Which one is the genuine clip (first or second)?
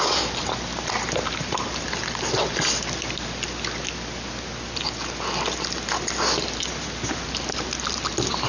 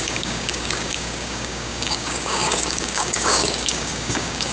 first